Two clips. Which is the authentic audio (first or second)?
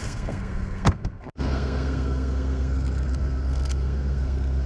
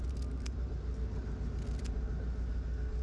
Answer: second